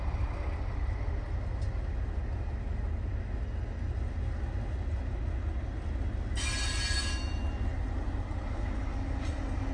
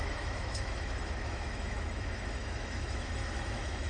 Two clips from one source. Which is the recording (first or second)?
first